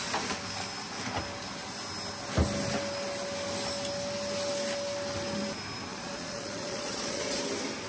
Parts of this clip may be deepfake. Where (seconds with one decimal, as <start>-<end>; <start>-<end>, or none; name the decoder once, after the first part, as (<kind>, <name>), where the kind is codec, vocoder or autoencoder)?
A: 5.9-7.4 (vocoder, Vocos)